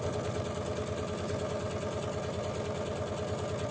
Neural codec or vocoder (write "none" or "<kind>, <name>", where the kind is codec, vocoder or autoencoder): none